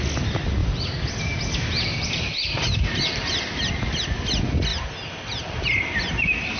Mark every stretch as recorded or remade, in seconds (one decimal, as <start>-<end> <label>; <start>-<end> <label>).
0.0-0.6 recorded; 0.6-1.2 remade; 1.2-4.7 recorded; 4.7-6.6 remade